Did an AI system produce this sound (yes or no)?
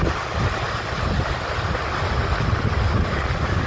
no